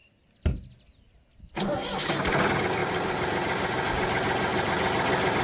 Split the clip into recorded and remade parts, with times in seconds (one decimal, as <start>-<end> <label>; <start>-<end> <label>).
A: 0.0-5.4 recorded